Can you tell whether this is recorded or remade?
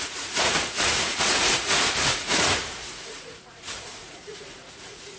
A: remade